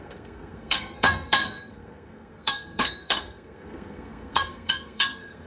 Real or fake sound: fake